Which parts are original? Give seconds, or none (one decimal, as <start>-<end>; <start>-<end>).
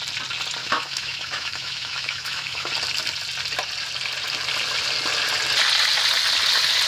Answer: 0.0-0.6; 2.7-6.9